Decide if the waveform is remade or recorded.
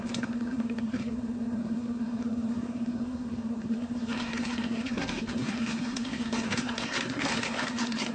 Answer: remade